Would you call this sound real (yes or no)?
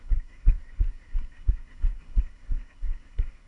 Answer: no